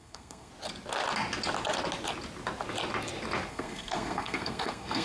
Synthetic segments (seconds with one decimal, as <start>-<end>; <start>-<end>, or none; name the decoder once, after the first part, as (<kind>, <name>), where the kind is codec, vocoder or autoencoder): 0.0-0.5 (codec, SNAC); 3.5-5.0